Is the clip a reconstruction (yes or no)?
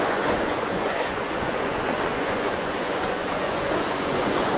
yes